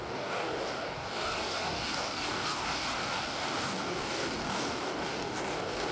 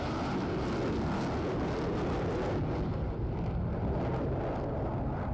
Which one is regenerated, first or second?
first